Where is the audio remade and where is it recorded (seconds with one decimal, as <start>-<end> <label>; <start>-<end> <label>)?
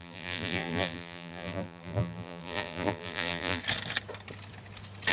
0.0-3.6 remade; 3.6-5.1 recorded